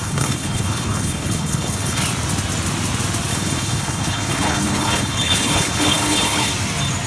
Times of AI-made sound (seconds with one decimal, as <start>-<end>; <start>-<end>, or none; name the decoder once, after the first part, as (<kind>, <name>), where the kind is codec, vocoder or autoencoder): 0.0-2.0 (codec, HILCodec); 3.3-6.5